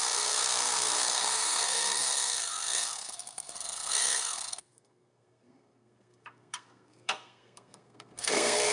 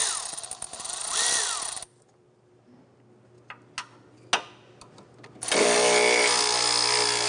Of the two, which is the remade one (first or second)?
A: first